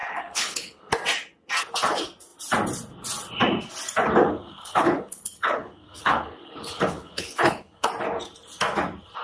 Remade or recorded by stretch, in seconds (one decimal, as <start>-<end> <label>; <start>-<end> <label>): 0.0-0.9 remade; 0.9-4.2 recorded; 4.2-7.9 remade; 7.9-9.2 recorded